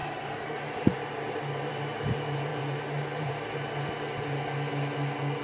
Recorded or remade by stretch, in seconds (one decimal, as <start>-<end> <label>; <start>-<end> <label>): 0.0-1.7 remade; 1.7-2.5 recorded; 2.5-3.3 remade; 3.3-5.4 recorded